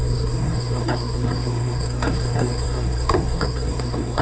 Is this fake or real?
fake